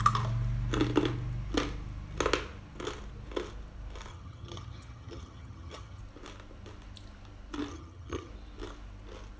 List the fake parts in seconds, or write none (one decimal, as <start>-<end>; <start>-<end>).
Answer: 4.1-6.0; 7.7-8.3